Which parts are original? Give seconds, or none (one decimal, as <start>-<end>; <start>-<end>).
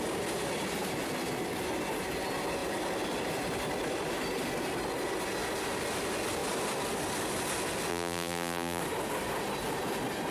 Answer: 0.0-7.9; 8.8-10.3